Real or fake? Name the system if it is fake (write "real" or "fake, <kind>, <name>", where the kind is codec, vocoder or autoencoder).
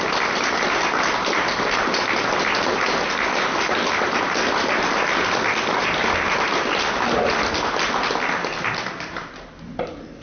real